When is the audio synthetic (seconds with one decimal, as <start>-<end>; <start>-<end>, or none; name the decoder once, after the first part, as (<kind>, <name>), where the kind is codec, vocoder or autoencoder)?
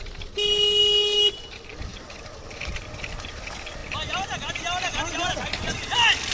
none